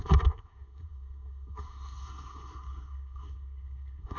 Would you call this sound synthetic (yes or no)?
yes